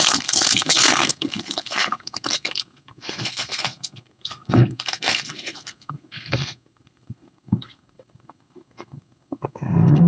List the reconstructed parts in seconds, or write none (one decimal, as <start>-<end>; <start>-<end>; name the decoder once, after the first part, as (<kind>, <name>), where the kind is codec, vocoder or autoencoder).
0.0-10.1 (codec, SNAC)